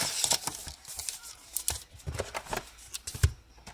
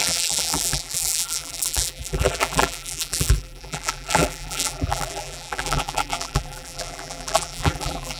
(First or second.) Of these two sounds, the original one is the first